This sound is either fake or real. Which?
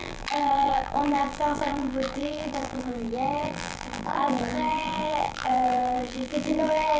fake